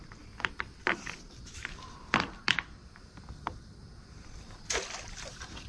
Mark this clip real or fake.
real